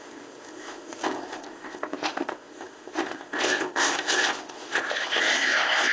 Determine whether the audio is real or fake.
fake